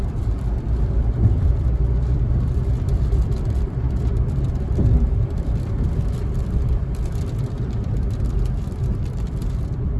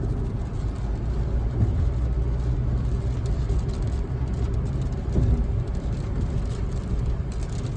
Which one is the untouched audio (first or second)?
second